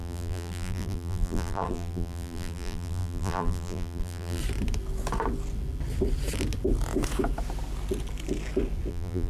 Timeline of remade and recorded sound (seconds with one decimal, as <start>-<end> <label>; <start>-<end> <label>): 0.0-4.4 remade; 4.4-8.9 recorded; 8.9-9.3 remade